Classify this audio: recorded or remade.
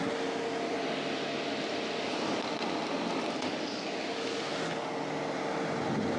recorded